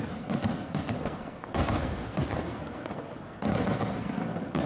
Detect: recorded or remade remade